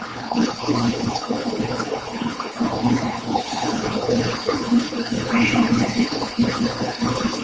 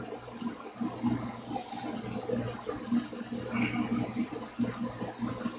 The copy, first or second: first